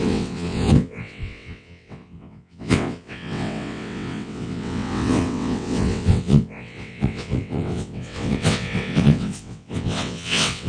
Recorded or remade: remade